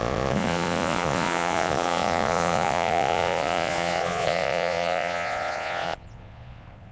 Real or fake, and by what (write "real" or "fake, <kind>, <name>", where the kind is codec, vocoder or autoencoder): fake, vocoder, Vocos